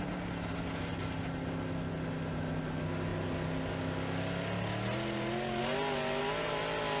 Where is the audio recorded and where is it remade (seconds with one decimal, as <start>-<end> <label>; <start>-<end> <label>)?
0.0-7.0 recorded